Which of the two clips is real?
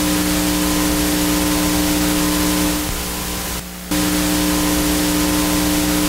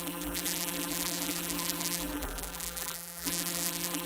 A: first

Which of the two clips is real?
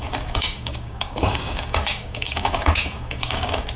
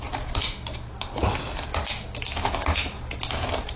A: second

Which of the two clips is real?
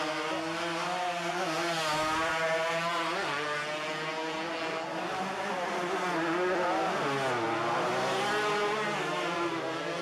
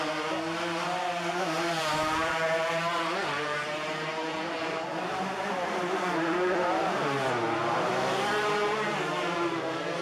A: first